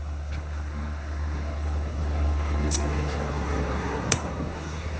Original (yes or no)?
no